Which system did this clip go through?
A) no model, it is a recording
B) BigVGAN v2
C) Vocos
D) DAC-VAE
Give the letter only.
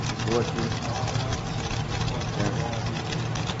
A